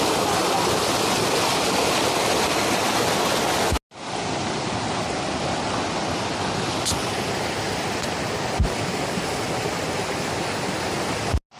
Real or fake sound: real